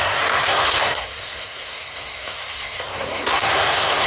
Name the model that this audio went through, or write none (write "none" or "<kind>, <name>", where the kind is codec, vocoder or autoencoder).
codec, SNAC